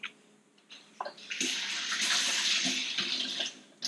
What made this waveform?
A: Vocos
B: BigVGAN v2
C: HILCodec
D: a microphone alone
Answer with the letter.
D